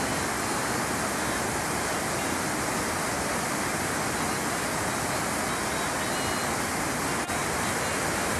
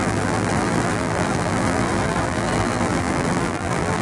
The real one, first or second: first